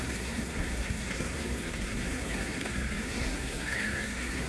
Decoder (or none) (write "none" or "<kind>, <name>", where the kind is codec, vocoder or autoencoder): codec, SNAC